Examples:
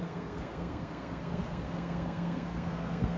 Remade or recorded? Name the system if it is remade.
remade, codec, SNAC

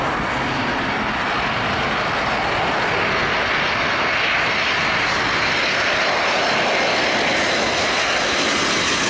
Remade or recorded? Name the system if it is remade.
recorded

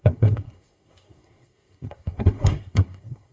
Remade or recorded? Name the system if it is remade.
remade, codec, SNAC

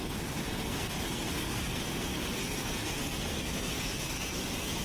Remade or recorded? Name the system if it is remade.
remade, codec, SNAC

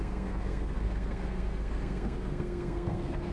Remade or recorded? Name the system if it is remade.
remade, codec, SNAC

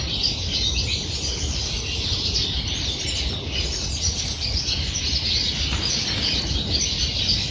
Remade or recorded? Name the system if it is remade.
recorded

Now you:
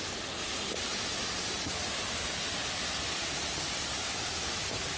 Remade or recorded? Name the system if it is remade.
recorded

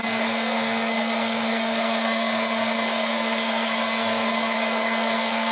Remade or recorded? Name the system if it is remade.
remade, codec, SNAC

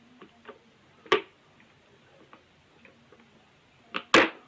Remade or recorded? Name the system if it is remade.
recorded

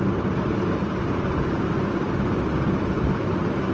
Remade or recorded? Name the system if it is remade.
recorded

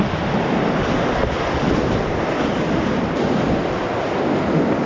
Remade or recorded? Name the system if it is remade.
recorded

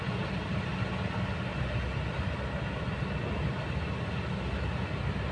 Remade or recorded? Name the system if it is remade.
recorded